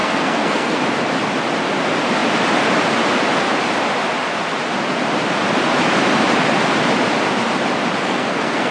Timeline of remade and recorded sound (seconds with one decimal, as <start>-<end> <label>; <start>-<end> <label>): 0.0-0.8 remade; 0.8-8.0 recorded; 8.0-8.7 remade